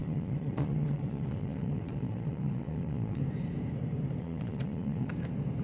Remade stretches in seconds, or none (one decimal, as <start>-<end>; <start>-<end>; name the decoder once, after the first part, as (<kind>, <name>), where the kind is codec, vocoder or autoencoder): 0.0-3.2 (vocoder, Vocos); 4.2-5.1